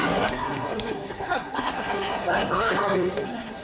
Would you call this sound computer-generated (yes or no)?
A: yes